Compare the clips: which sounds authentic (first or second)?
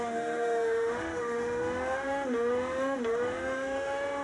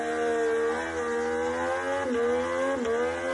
second